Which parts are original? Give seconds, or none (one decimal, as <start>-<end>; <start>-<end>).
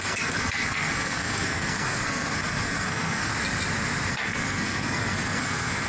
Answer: 3.3-4.1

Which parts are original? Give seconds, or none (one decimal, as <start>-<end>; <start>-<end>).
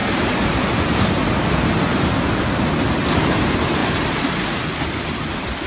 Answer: 0.0-3.8; 4.7-5.7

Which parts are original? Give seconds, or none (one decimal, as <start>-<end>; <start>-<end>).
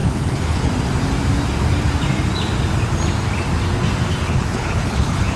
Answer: 0.7-4.1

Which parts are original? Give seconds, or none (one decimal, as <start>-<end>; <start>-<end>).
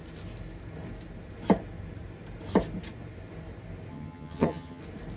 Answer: 0.0-3.9; 4.8-5.2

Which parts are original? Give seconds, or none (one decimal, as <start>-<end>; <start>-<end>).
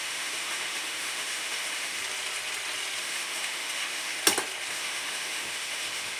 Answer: 2.0-3.0; 4.2-4.7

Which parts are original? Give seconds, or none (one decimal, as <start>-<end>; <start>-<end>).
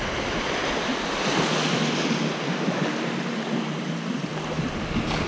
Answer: 0.0-5.3